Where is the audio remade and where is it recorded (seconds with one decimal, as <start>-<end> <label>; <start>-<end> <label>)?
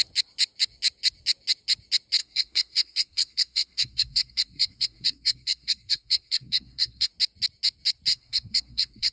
0.0-2.2 recorded; 2.2-7.1 remade; 7.1-8.1 recorded; 8.1-9.1 remade